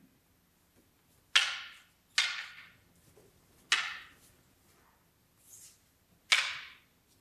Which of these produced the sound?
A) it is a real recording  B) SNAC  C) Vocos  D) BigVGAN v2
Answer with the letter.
A